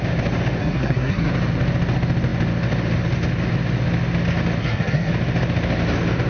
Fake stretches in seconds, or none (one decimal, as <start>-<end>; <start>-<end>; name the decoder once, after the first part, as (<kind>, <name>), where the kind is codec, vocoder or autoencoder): 0.6-1.3 (codec, SNAC); 4.6-5.1